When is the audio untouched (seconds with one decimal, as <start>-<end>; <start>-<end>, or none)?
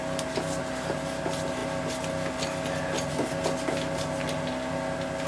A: 0.0-5.3